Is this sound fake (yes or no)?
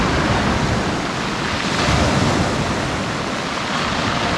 no